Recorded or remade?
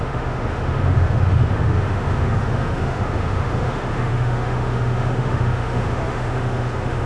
remade